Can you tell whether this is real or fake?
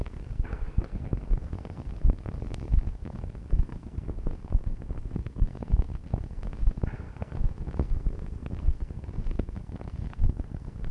fake